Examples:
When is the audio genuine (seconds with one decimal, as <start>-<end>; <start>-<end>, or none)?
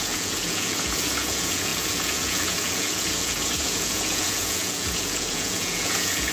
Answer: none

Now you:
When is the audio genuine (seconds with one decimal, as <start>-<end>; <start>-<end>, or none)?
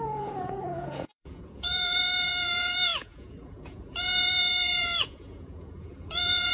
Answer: none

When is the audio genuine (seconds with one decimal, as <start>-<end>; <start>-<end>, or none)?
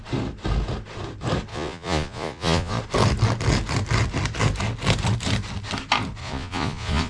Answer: 0.0-1.5; 2.8-6.2